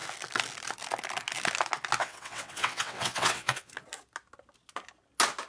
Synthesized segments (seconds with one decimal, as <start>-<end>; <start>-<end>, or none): 2.0-3.7